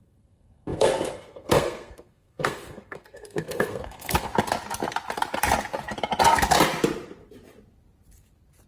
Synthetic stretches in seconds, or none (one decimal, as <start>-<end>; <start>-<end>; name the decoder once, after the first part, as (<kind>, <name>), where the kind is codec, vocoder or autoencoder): 0.0-4.3 (codec, SNAC)